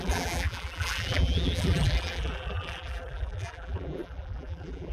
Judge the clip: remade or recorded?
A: remade